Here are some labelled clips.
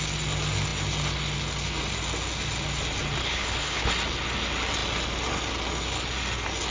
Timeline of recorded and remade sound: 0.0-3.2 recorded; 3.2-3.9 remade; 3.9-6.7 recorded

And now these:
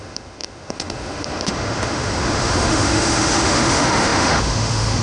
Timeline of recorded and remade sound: 0.0-5.0 remade

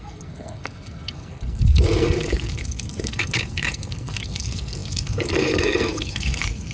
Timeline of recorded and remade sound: 0.0-6.7 remade

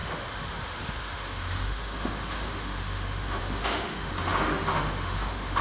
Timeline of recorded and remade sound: 0.0-5.6 remade

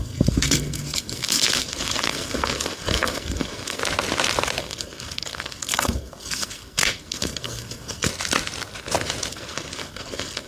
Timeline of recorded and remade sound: 0.0-3.8 remade; 3.8-4.6 recorded; 4.6-8.1 remade; 8.1-9.3 recorded; 9.3-10.5 remade